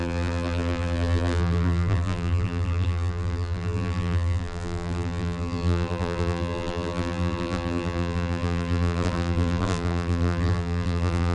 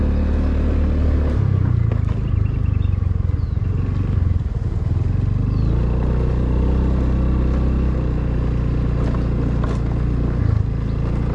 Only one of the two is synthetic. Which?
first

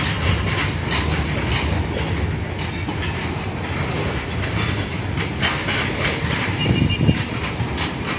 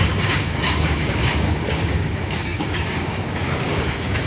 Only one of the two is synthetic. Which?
second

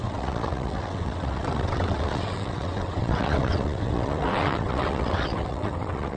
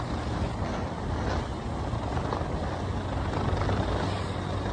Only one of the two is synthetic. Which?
first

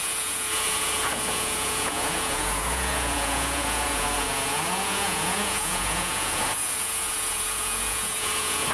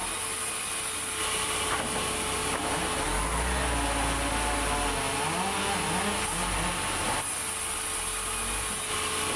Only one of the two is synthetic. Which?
first